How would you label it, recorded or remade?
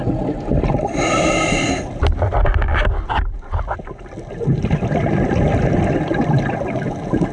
recorded